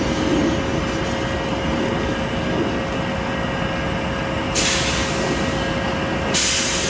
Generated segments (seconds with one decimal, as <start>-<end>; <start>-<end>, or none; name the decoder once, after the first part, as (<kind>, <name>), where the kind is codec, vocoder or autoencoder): none